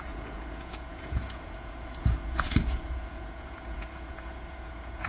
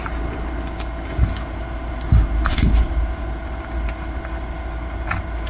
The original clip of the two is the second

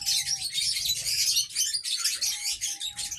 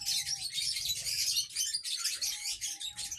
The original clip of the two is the first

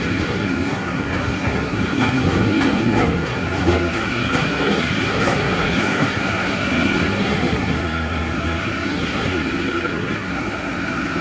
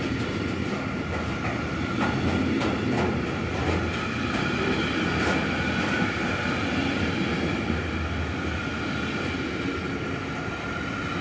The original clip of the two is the second